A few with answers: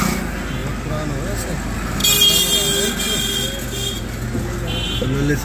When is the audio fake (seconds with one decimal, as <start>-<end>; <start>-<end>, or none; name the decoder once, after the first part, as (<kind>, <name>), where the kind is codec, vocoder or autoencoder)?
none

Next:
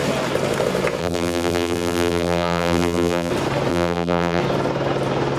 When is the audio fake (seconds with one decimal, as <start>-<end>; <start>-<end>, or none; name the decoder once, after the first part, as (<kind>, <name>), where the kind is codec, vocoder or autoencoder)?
1.0-3.3 (vocoder, BigVGAN v2); 3.7-4.4

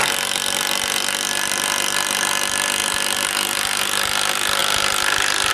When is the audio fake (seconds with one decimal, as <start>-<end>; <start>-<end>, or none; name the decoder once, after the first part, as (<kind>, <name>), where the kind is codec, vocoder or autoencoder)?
none

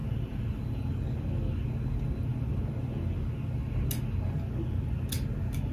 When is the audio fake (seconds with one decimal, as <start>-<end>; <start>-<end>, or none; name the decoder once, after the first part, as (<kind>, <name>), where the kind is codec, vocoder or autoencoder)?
0.0-0.9 (vocoder, BigVGAN v2)

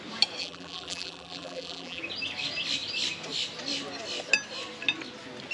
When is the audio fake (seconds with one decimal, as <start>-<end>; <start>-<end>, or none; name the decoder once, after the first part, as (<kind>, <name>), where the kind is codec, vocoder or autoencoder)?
0.4-2.0 (vocoder, BigVGAN v2)